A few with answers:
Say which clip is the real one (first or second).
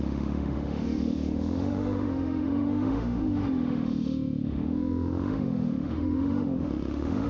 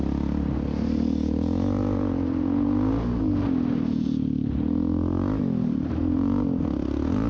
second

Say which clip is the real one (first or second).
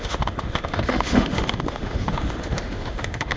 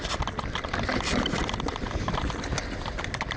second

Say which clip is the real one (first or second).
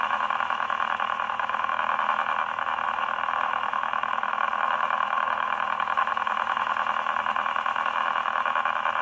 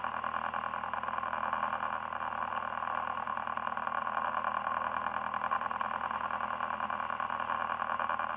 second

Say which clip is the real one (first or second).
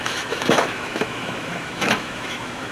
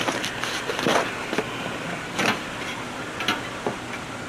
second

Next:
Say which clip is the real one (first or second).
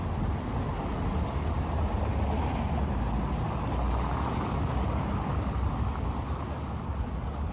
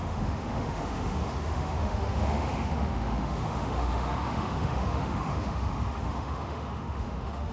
first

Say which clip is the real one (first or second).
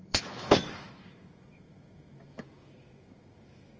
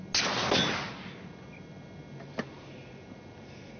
second